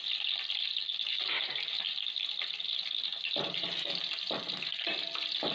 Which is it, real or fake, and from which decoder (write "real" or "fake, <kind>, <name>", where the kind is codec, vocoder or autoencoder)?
real